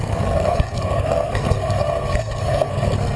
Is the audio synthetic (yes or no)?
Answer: yes